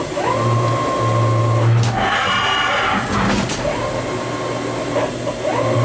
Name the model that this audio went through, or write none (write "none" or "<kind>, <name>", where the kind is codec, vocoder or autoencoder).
none